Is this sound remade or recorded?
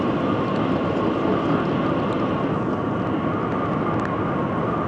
recorded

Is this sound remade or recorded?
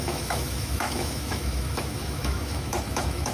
remade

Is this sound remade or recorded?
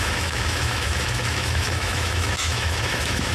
remade